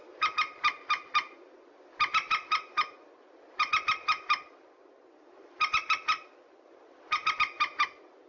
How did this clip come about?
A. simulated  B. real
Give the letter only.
A